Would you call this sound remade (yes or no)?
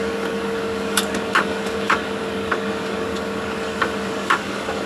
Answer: yes